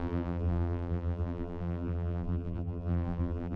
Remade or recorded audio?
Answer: remade